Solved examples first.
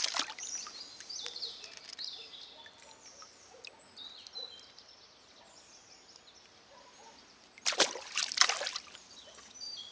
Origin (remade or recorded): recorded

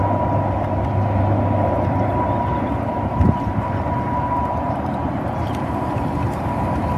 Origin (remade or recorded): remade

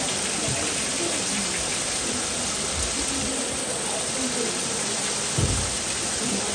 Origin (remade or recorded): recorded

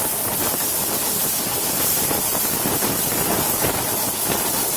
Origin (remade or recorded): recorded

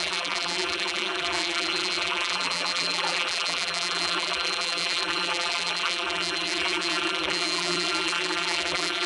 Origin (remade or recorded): remade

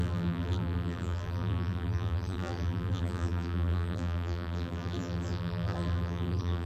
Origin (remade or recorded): remade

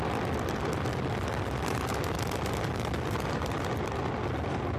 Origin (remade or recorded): remade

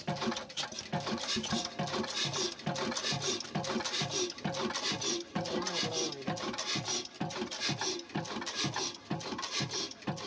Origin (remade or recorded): recorded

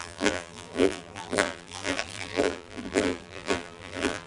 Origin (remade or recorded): remade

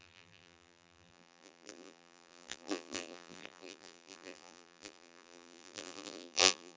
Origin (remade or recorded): remade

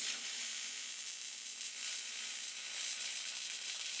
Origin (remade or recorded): remade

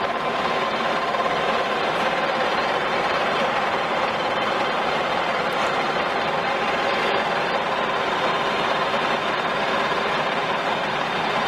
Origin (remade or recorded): remade